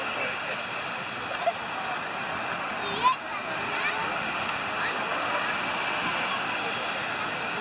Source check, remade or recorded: recorded